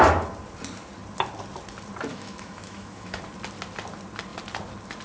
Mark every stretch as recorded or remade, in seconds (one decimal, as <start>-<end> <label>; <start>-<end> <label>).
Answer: 0.0-2.1 recorded; 2.1-3.2 remade; 3.2-5.0 recorded